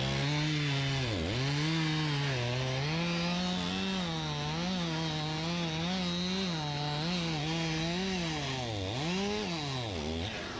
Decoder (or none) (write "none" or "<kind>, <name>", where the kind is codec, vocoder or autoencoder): none